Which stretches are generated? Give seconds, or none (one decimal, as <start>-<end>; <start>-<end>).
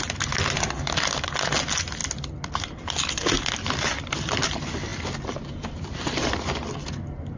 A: none